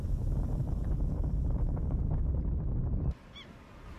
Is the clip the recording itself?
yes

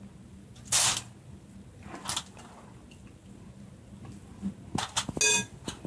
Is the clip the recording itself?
yes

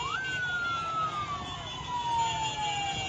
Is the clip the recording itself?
yes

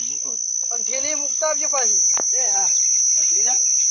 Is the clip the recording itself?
yes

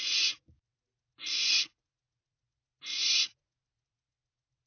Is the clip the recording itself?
yes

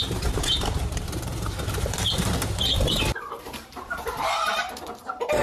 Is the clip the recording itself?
no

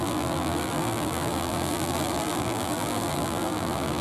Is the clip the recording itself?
no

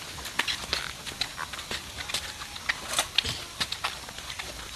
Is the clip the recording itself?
yes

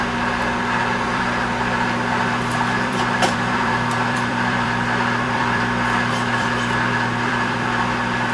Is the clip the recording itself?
no